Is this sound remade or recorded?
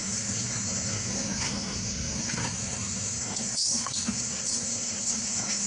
remade